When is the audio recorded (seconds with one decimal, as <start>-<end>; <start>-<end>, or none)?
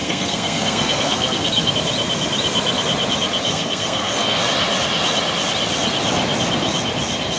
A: 1.7-3.5; 4.4-7.4